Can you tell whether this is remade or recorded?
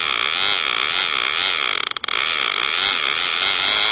recorded